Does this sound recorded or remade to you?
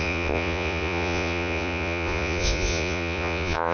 remade